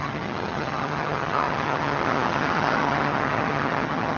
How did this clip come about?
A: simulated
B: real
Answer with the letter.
A